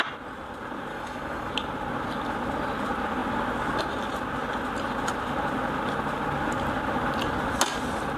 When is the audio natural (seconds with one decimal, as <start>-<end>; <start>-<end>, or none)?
0.0-0.9; 1.5-8.2